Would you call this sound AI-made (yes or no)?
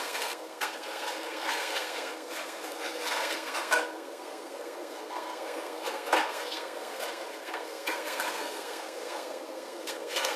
yes